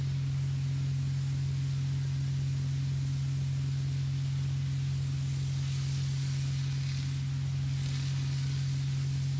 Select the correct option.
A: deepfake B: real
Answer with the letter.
B